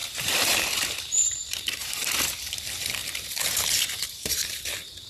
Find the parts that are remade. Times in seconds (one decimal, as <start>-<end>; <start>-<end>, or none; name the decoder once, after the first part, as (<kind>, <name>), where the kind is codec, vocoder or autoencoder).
0.0-2.2 (vocoder, BigVGAN v2); 3.0-4.6